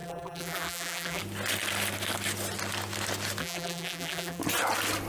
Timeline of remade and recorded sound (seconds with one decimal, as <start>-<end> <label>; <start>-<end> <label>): 0.0-1.2 remade; 1.2-3.4 recorded; 3.4-4.4 remade; 4.4-5.1 recorded